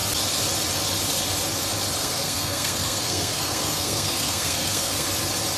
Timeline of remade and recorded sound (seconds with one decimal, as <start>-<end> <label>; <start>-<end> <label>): 0.0-2.0 recorded; 2.0-5.1 remade; 5.1-5.6 recorded